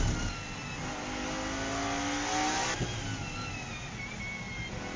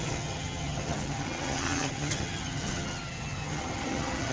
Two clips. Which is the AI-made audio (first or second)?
second